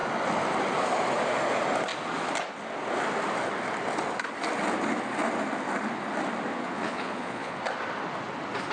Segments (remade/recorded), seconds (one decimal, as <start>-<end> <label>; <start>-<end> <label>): 0.0-6.5 recorded; 6.5-7.6 remade; 7.6-8.7 recorded